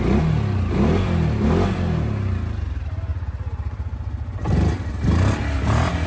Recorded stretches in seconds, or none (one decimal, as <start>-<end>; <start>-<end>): 0.0-6.1